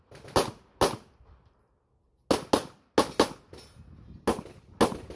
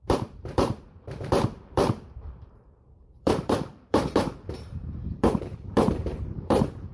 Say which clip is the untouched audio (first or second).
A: first